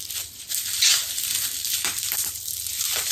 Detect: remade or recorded remade